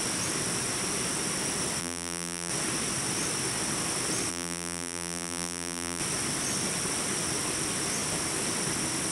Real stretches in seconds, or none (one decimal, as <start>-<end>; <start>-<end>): 0.0-1.8; 2.5-4.3; 6.0-9.1